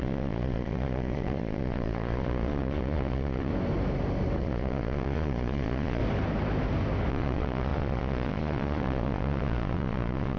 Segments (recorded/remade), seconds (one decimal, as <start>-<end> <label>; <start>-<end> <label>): 0.0-3.5 remade; 3.5-4.4 recorded; 4.4-6.0 remade; 6.0-7.1 recorded; 7.1-10.4 remade